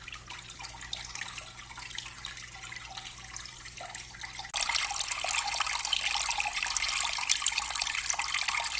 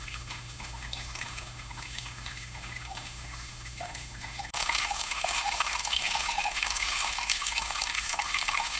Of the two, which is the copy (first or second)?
second